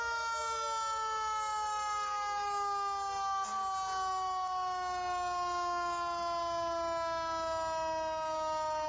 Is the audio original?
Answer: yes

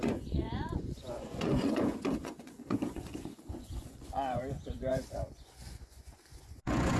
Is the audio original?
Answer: no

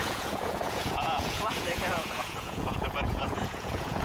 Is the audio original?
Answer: no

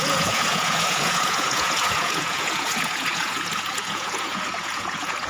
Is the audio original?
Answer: no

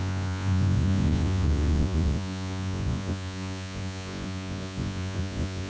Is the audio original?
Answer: no